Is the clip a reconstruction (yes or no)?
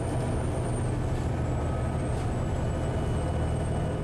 no